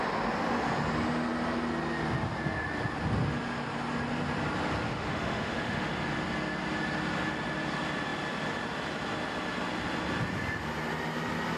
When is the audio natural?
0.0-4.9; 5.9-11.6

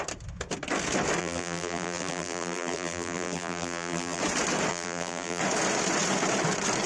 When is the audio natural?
0.0-1.2; 4.2-4.7; 5.4-6.9

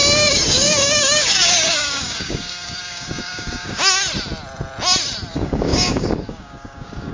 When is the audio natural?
3.8-5.3